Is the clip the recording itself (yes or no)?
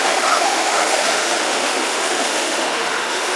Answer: no